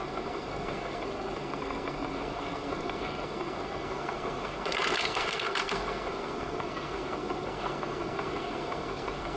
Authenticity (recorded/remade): remade